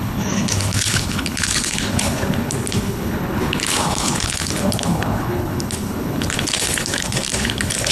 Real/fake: fake